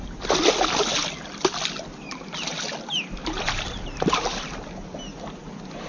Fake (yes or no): no